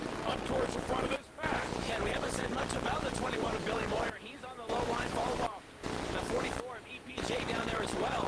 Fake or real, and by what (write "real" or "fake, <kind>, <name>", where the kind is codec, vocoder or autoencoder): fake, vocoder, BigVGAN v2